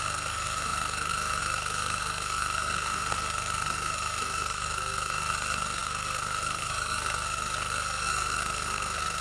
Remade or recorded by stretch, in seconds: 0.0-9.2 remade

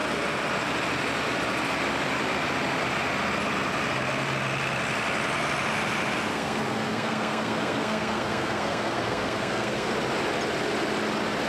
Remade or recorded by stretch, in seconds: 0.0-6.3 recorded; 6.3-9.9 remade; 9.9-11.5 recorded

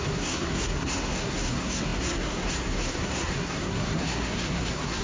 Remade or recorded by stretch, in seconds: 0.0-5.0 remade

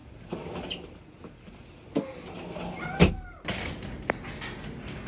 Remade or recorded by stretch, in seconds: 0.0-5.1 recorded

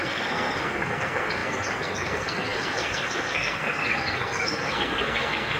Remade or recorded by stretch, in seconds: 0.0-5.6 remade

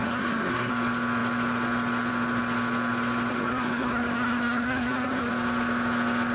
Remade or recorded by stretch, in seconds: 0.0-0.7 remade; 0.7-3.3 recorded; 3.3-5.3 remade; 5.3-6.3 recorded

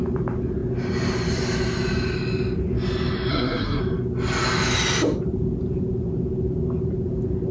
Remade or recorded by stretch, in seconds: 0.0-3.3 recorded; 3.3-3.8 remade; 3.8-7.5 recorded